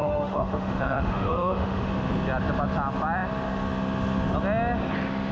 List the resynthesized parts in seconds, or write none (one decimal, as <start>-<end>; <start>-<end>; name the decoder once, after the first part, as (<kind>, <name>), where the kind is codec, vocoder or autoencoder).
0.0-1.9 (autoencoder, DAC-VAE)